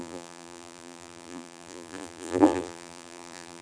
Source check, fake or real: fake